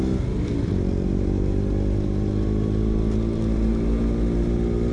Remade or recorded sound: recorded